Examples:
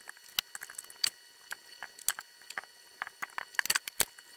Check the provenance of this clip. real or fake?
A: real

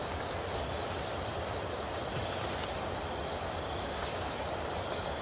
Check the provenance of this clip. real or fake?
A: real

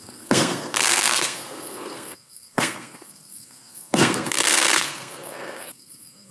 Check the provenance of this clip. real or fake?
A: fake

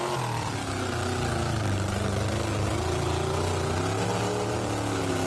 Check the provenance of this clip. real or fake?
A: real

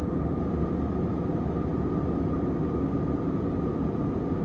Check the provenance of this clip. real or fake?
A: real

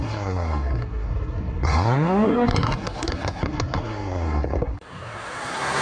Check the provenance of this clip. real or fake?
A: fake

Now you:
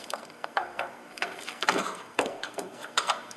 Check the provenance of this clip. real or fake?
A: fake